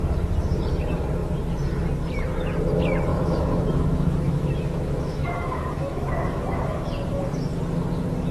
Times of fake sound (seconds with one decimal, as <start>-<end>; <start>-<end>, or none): 3.1-6.9